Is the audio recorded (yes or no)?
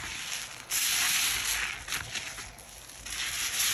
yes